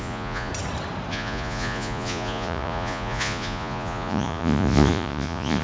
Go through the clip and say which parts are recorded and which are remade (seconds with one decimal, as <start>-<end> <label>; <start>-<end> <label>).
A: 0.0-0.5 remade; 0.5-1.1 recorded; 1.1-5.6 remade